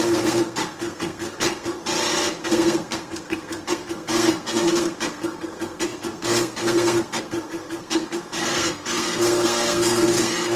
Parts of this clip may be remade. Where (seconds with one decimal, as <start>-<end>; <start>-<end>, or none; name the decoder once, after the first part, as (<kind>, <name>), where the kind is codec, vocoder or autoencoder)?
0.0-1.8 (codec, SNAC); 2.4-10.6